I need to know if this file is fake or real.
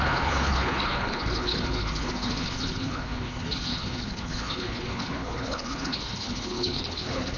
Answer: fake